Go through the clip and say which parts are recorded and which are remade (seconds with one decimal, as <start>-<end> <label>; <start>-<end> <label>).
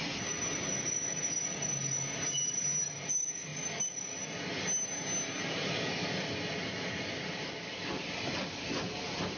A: 0.0-9.4 recorded